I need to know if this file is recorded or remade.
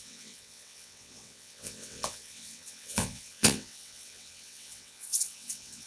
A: remade